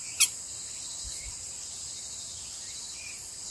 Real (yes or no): yes